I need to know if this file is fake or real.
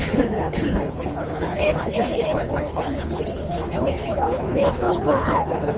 fake